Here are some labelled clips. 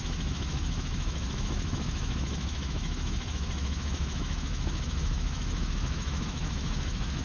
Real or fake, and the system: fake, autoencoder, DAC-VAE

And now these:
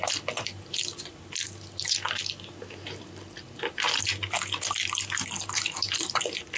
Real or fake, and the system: real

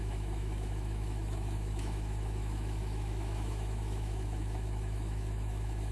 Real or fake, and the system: fake, autoencoder, DAC-VAE